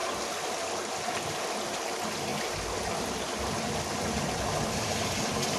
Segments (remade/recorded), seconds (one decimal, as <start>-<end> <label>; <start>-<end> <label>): 0.0-5.6 recorded